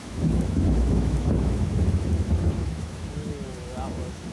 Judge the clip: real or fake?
fake